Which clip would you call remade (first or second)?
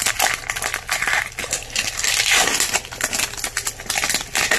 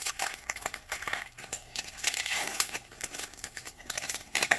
second